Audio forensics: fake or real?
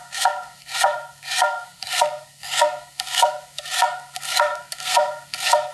fake